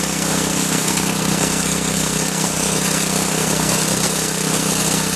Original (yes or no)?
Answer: no